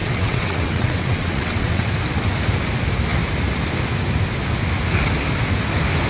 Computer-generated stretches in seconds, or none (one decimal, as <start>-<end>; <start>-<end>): 0.0-1.9